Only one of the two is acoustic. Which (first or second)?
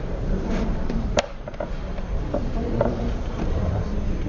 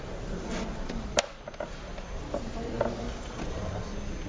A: second